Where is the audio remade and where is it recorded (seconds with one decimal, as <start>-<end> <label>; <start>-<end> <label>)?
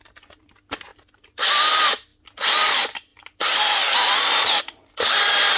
0.0-0.9 recorded; 0.9-1.7 remade; 1.7-3.1 recorded; 3.1-4.6 remade; 4.6-5.6 recorded